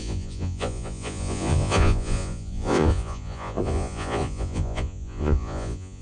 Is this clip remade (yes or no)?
yes